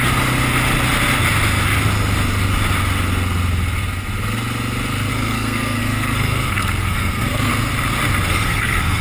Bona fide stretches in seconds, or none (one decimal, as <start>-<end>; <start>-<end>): 0.0-5.1; 7.5-8.3